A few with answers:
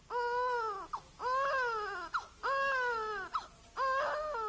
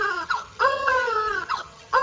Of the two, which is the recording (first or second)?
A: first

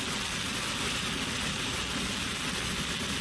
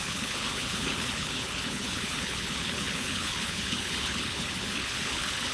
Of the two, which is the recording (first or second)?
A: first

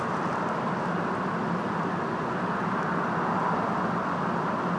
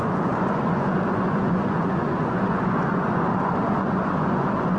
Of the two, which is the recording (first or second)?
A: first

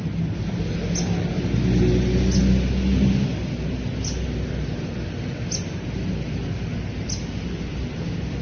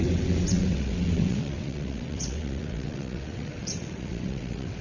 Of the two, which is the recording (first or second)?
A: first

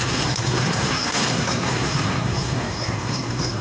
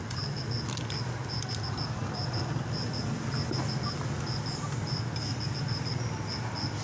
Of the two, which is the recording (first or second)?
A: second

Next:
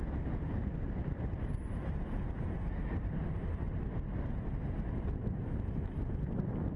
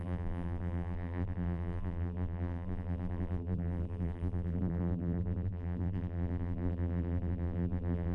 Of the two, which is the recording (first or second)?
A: first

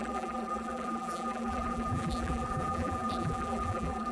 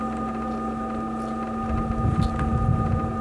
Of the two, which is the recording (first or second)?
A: second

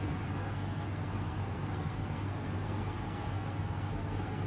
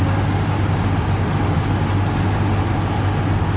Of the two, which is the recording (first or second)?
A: second